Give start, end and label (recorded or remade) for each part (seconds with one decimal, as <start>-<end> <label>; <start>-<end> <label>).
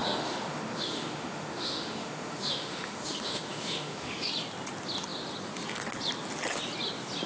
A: 0.0-4.3 remade; 4.3-7.3 recorded